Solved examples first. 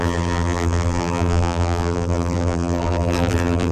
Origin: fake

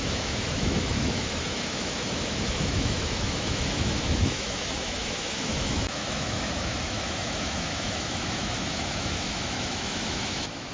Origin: fake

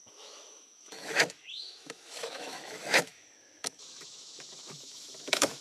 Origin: fake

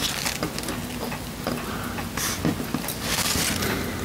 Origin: real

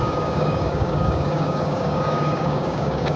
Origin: fake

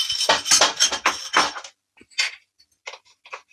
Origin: real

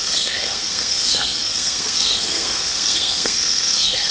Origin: fake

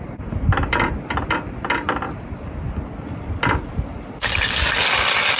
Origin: real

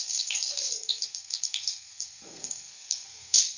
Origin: fake